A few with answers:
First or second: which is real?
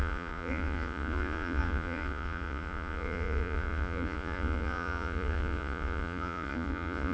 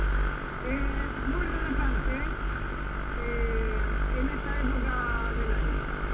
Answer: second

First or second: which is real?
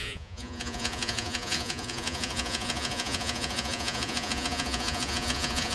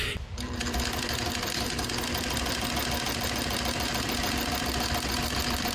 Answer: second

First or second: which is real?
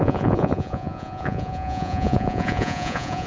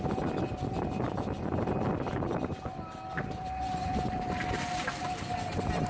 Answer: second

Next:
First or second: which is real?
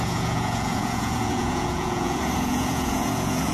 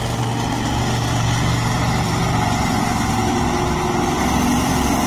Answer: second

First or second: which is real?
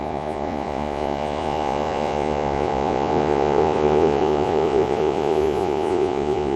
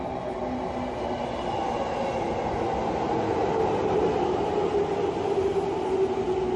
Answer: second